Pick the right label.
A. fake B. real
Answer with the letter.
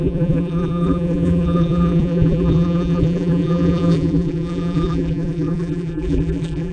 A